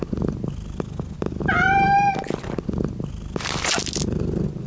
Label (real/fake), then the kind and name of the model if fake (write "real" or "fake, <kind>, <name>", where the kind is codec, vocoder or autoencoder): real